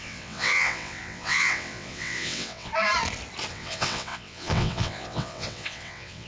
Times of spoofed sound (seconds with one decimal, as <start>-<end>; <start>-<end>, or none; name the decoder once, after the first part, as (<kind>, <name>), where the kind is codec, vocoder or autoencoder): 0.0-2.7 (vocoder, WaveNeXt); 3.5-6.3